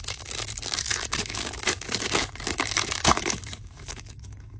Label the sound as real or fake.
fake